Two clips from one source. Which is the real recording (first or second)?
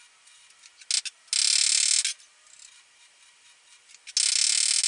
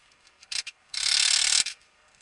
first